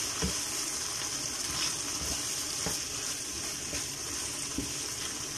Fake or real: real